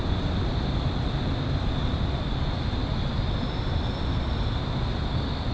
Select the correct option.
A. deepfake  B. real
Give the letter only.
B